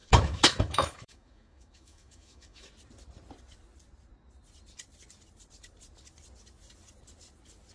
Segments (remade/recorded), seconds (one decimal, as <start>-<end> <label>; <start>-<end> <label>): 0.0-2.7 remade; 2.7-7.7 recorded